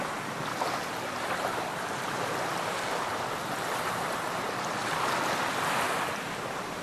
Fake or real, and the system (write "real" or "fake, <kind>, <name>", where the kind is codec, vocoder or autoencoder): fake, vocoder, BigVGAN v2